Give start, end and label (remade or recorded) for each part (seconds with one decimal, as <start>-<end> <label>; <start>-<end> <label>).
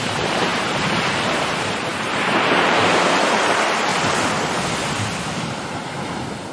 0.0-3.9 remade; 3.9-5.2 recorded; 5.2-6.5 remade